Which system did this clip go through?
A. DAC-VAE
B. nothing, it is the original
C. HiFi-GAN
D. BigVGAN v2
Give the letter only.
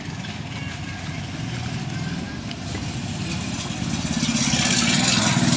B